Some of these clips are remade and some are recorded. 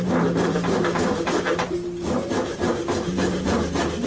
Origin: remade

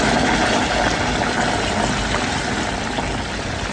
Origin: recorded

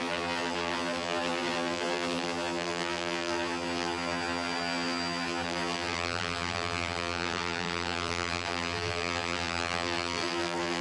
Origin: remade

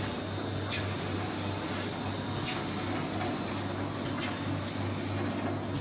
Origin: recorded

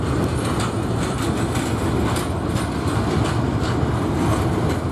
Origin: recorded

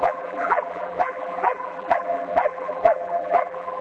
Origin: remade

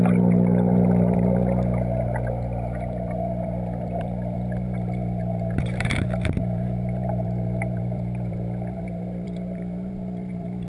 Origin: remade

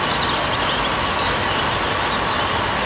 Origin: recorded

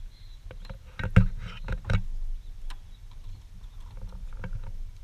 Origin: recorded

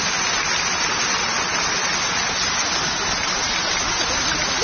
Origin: recorded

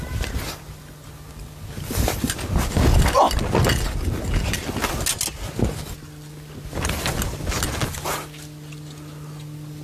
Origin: recorded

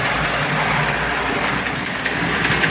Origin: recorded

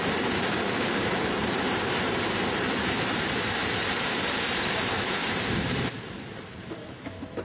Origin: remade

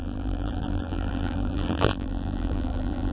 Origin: remade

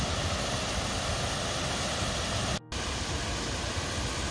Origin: recorded